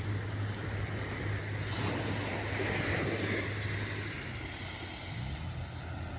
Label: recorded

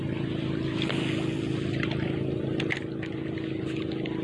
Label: recorded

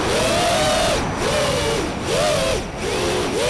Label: recorded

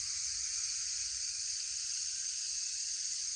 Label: recorded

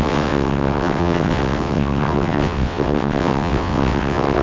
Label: remade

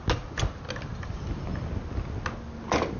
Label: recorded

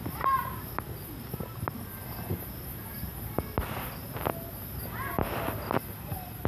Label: recorded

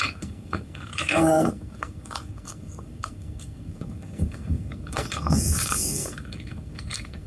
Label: remade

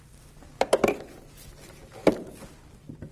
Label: recorded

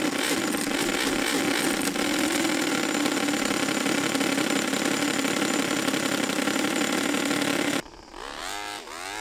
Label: recorded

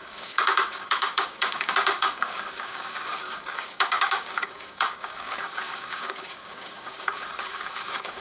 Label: remade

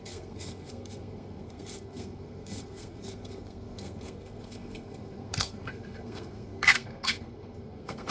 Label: remade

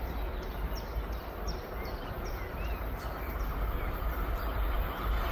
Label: recorded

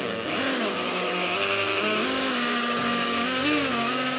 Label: remade